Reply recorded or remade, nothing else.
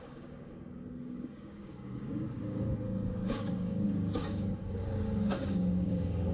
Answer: remade